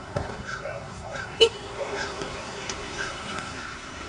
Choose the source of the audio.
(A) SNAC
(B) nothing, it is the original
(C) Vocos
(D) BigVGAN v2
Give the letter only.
A